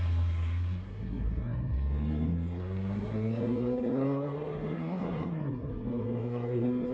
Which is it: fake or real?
fake